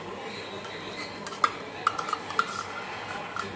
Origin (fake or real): real